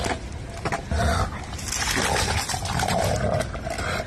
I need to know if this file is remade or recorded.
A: recorded